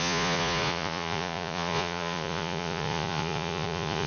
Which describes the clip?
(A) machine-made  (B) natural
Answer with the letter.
A